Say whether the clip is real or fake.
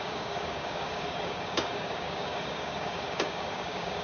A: fake